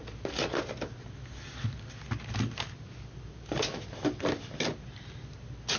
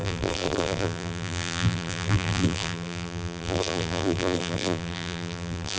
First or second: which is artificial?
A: second